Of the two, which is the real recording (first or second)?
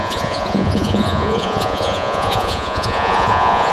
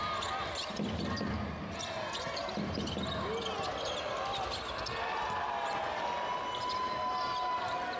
second